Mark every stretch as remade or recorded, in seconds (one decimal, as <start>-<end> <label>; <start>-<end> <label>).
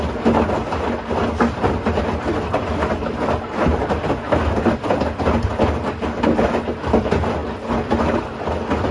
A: 0.0-8.9 recorded